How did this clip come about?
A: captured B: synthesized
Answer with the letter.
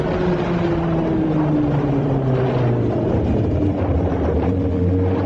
A